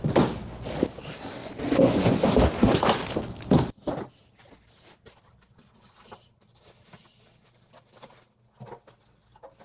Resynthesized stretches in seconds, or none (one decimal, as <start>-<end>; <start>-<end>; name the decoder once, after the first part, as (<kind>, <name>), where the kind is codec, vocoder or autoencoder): 1.4-2.2 (vocoder, Vocos)